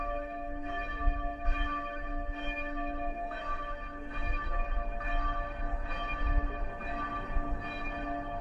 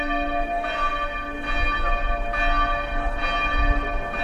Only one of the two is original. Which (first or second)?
second